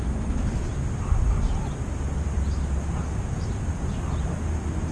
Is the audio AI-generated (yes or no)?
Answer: no